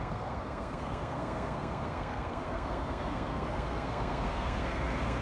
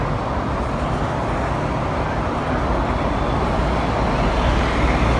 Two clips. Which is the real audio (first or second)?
second